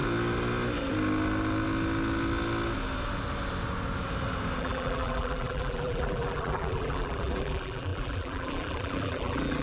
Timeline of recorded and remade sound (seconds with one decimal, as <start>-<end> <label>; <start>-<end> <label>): 0.0-4.6 recorded; 4.6-9.6 remade

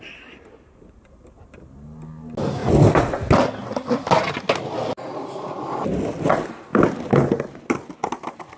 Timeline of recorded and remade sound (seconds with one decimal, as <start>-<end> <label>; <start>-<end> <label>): 0.0-8.6 recorded